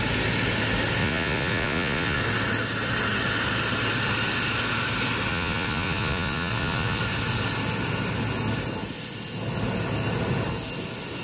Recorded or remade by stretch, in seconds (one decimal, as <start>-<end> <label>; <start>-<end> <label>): 0.0-1.0 recorded; 1.0-2.2 remade; 2.2-5.3 recorded; 5.3-7.0 remade; 7.0-11.2 recorded